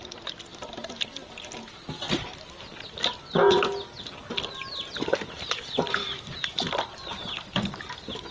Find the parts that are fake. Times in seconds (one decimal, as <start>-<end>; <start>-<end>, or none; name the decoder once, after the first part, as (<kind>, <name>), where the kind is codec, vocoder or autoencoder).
0.5-1.3 (vocoder, BigVGAN v2); 6.0-7.1